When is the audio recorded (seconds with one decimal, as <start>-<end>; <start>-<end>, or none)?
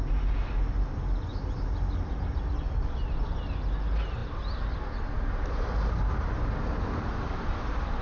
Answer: 0.0-8.0